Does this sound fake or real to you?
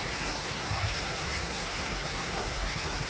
fake